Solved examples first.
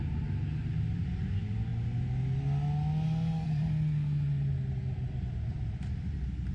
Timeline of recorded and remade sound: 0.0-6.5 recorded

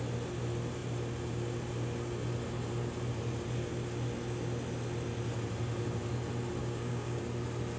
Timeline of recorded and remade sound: 0.0-6.6 recorded; 6.6-7.2 remade; 7.2-7.8 recorded

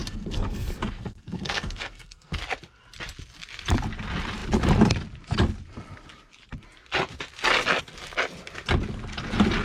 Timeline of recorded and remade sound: 0.0-2.4 remade; 2.4-9.6 recorded

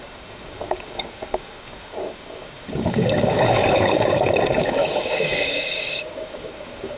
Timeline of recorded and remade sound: 0.0-7.0 remade

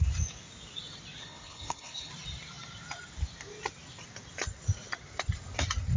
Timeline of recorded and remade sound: 0.0-1.2 recorded; 1.2-2.1 remade; 2.1-6.0 recorded

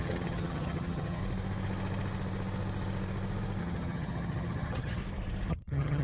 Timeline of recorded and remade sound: 0.0-1.2 remade; 1.2-3.6 recorded; 3.6-5.0 remade; 5.0-5.5 recorded; 5.5-6.0 remade

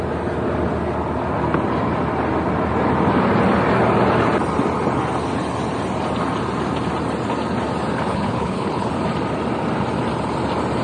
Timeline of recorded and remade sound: 0.0-8.1 recorded; 8.1-8.9 remade; 8.9-10.8 recorded